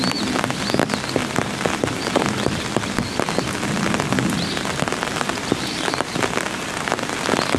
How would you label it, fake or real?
real